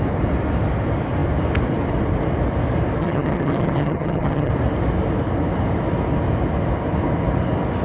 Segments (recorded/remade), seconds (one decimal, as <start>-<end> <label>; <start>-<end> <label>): 0.0-3.0 recorded; 3.0-4.5 remade; 4.5-7.8 recorded